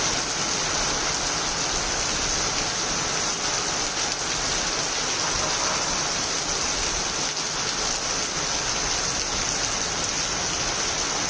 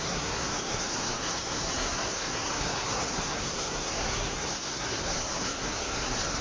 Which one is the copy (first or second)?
second